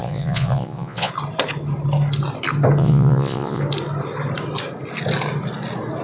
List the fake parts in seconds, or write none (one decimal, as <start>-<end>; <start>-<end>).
0.0-1.1; 2.8-3.6